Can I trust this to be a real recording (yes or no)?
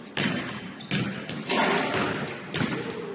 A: yes